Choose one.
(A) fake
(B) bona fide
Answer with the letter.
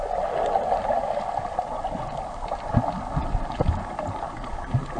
B